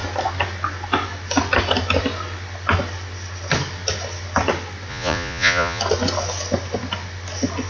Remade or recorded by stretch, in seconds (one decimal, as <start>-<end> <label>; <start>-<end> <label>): 0.0-4.9 recorded; 4.9-5.8 remade; 5.8-7.7 recorded